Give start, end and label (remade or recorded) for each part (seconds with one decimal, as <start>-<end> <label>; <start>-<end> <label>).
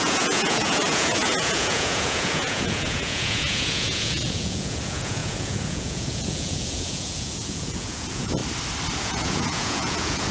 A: 0.0-8.4 remade; 8.4-9.0 recorded; 9.0-10.3 remade